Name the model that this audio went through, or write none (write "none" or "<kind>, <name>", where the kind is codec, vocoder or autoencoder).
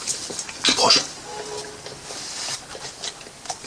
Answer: none